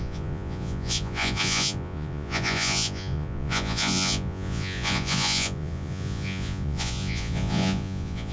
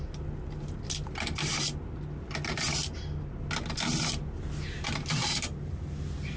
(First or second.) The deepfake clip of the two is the first